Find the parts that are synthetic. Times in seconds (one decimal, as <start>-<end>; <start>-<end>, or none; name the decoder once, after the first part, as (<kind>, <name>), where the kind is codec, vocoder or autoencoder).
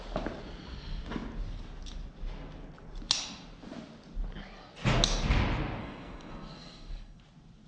5.8-7.2 (codec, SNAC)